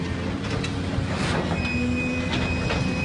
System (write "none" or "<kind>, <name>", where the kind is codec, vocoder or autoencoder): none